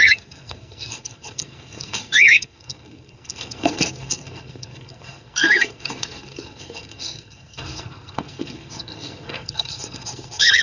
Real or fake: fake